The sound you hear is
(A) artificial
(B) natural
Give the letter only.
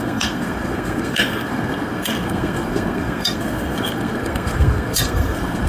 A